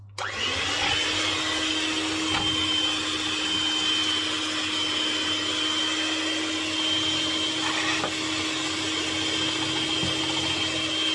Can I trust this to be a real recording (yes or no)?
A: yes